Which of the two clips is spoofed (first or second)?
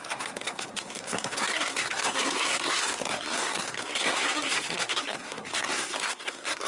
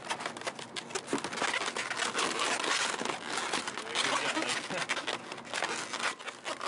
first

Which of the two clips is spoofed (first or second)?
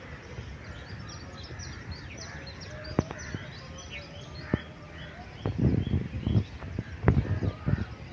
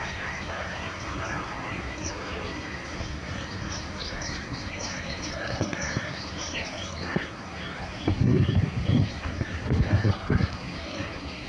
second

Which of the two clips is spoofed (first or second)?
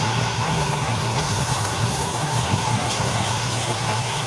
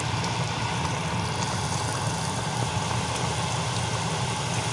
first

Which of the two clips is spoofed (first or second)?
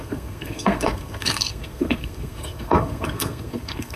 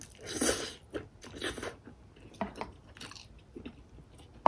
first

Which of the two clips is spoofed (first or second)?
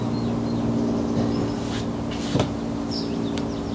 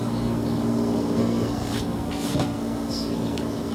second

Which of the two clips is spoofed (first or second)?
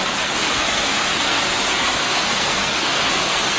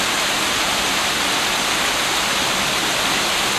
first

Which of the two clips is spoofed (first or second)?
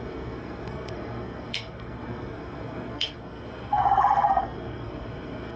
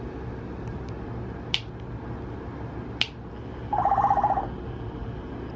first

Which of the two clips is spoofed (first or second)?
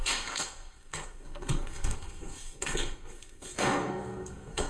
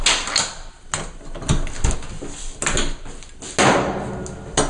first